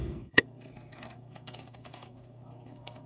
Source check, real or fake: fake